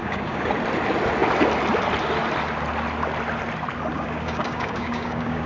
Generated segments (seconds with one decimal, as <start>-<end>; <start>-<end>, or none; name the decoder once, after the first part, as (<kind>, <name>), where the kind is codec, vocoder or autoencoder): 0.0-0.5 (codec, DAC); 3.9-5.5